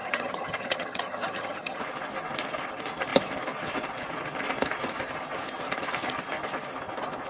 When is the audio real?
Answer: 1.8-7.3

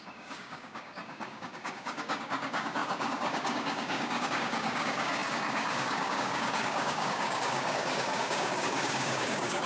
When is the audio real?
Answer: none